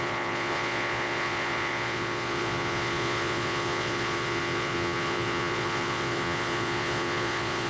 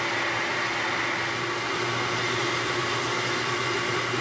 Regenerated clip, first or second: first